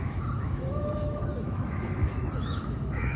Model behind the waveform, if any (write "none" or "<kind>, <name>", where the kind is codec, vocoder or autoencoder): autoencoder, DAC-VAE